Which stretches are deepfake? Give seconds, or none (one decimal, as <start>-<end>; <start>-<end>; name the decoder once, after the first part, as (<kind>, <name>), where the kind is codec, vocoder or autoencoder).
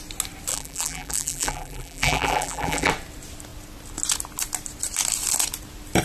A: 0.5-2.9 (vocoder, BigVGAN v2)